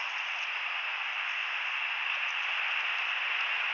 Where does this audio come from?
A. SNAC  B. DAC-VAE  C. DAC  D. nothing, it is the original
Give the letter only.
D